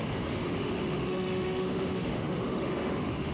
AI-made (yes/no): yes